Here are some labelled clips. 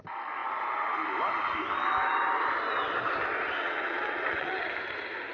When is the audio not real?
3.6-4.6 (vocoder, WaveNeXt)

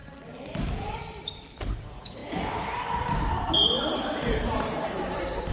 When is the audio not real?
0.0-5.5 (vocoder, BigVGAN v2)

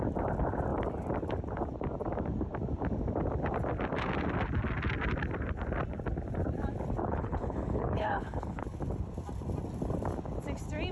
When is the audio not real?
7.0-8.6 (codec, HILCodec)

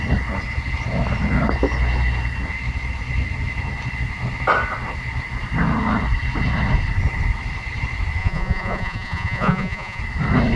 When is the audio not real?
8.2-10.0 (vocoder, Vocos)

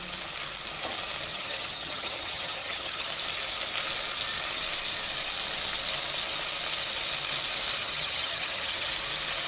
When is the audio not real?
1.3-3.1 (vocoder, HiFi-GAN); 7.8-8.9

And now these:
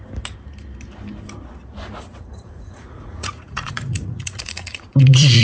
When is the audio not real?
2.1-5.4 (vocoder, Vocos)